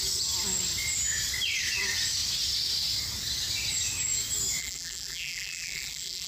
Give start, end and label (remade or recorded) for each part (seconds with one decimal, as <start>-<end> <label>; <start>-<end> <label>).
0.0-4.6 recorded; 4.6-6.3 remade